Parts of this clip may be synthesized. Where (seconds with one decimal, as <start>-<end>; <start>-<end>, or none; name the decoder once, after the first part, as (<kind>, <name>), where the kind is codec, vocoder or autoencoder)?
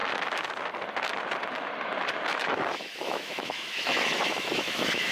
0.0-0.5 (autoencoder, DAC-VAE); 2.3-5.1